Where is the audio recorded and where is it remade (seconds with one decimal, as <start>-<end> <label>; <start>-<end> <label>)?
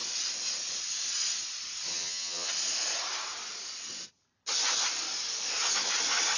0.0-1.9 recorded; 1.9-2.5 remade; 2.5-6.4 recorded